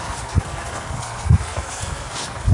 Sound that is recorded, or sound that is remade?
remade